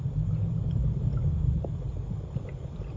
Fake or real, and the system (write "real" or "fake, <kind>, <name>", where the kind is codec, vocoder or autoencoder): real